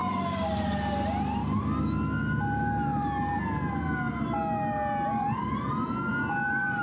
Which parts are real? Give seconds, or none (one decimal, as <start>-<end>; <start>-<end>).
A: 0.5-6.8